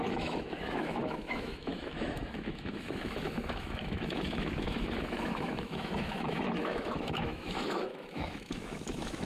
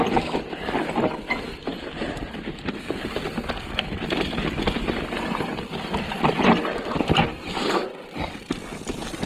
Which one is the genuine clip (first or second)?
second